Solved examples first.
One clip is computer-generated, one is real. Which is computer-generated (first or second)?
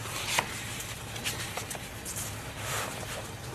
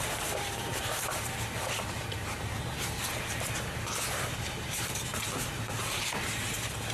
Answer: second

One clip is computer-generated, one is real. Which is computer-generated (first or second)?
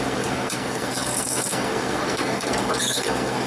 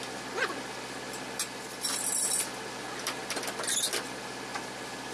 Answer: first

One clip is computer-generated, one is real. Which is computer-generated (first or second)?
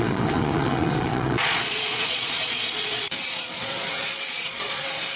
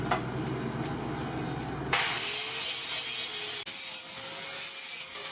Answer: first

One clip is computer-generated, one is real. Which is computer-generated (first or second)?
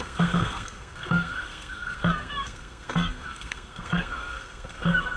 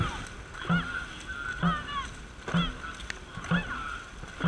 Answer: first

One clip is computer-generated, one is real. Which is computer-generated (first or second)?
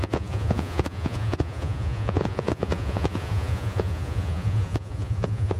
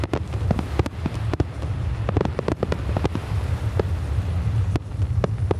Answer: first